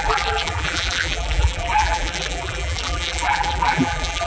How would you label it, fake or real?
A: fake